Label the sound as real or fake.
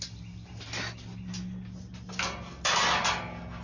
real